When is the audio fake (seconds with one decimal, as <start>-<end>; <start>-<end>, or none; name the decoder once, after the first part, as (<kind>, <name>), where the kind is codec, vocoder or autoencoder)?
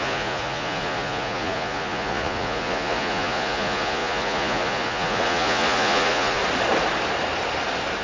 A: 0.0-6.4 (vocoder, Vocos)